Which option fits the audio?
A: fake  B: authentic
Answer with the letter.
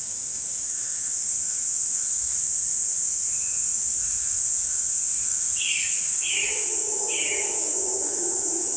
A